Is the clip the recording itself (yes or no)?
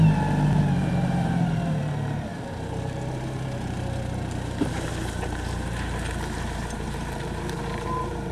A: no